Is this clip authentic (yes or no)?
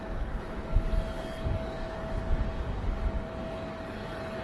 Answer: no